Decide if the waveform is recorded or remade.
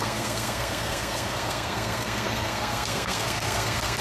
remade